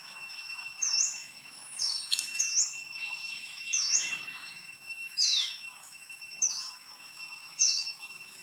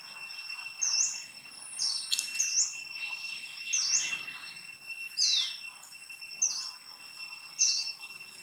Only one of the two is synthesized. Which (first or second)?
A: first